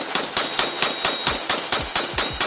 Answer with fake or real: real